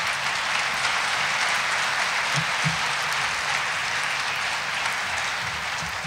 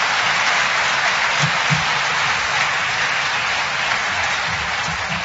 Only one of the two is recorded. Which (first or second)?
first